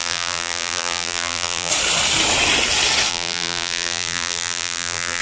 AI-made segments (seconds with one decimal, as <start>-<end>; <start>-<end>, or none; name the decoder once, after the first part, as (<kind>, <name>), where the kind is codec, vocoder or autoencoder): 0.0-1.7 (vocoder, BigVGAN v2); 3.1-5.2